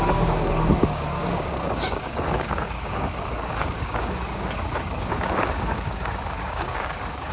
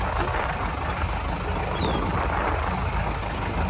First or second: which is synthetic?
first